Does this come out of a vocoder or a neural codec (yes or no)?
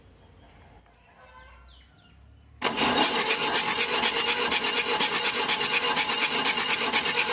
no